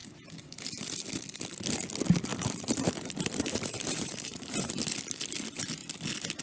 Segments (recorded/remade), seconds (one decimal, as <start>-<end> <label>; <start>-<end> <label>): 0.0-0.7 remade; 0.7-2.3 recorded; 2.3-4.7 remade; 4.7-6.4 recorded